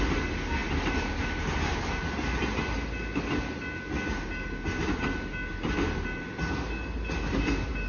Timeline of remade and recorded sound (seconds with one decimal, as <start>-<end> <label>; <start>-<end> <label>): 0.0-7.9 recorded